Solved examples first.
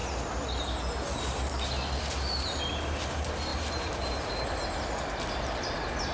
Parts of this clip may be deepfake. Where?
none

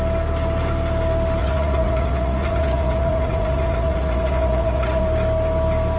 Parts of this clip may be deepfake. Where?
1.4-5.0 (vocoder, Vocos)

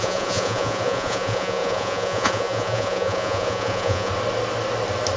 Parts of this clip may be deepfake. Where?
0.0-4.1 (vocoder, Vocos)

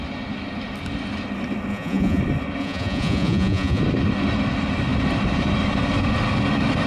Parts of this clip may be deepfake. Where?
1.7-2.2 (vocoder, Vocos); 2.6-3.8

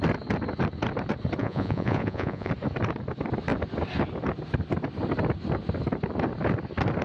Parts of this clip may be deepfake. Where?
1.4-2.5 (vocoder, Vocos)